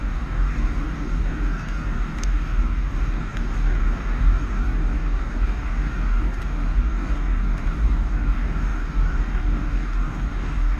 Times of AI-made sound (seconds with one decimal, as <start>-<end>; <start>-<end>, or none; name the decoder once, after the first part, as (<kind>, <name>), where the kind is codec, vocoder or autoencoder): 0.0-10.8 (codec, DAC)